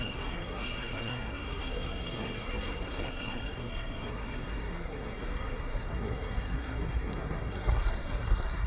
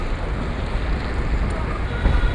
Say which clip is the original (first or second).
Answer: second